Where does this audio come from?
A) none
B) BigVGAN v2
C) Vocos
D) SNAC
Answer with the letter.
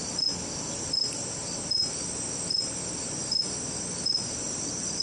A